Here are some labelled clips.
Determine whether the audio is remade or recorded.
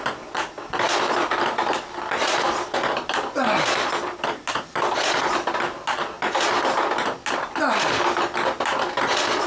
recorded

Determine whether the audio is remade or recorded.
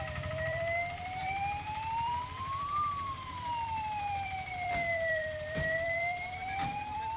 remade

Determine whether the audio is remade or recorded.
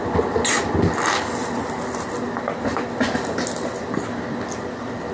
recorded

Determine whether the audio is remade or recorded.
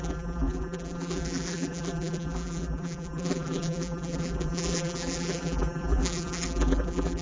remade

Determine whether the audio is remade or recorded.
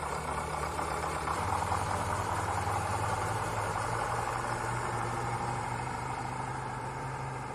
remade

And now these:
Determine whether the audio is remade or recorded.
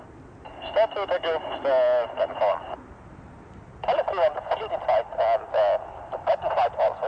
recorded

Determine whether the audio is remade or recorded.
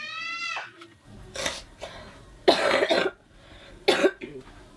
recorded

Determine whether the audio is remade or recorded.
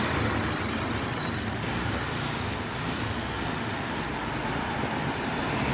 recorded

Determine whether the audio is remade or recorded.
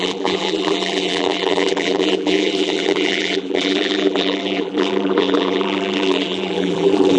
remade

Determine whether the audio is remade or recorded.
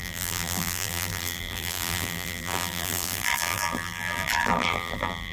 remade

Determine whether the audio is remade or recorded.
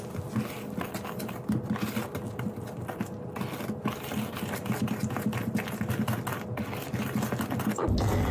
recorded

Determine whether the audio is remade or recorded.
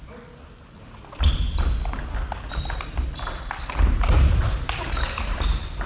recorded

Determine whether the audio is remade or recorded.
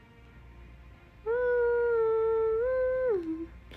recorded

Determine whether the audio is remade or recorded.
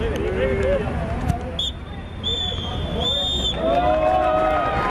recorded